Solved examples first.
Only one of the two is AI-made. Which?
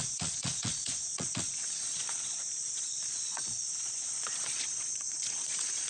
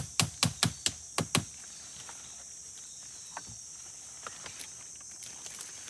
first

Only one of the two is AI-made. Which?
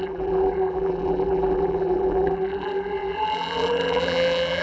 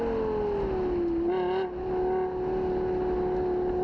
first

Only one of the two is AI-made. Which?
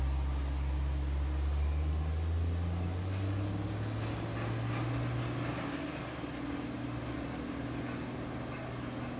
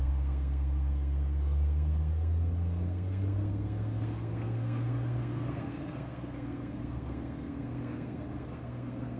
second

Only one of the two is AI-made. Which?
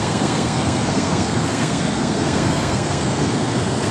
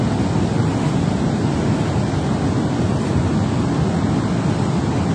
first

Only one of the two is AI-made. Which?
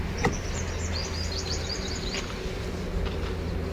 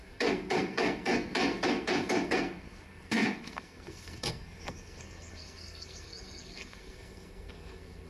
second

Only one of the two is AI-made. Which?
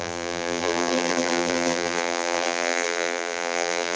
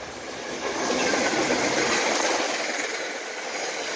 first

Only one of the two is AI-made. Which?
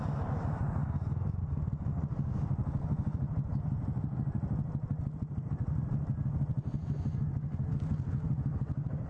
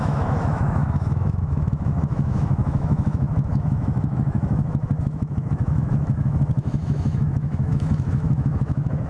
second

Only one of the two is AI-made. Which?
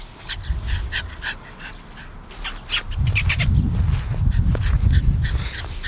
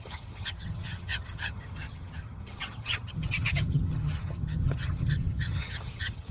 second